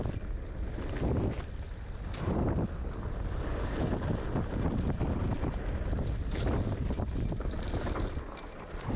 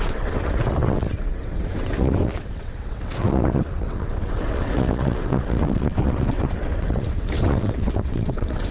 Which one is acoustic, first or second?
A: first